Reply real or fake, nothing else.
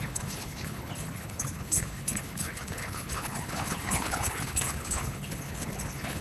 fake